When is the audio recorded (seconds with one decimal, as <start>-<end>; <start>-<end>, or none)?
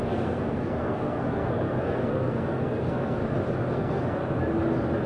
3.2-3.7; 4.2-5.1